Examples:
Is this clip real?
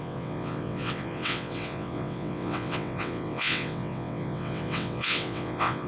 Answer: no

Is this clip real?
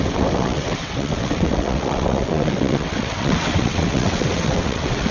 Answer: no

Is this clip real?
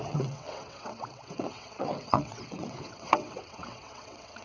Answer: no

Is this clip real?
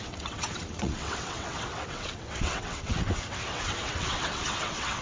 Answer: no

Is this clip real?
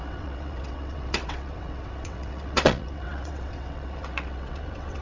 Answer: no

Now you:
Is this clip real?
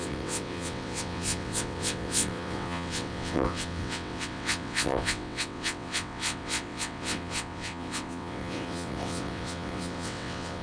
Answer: no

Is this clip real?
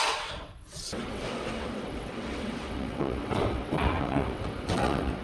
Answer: no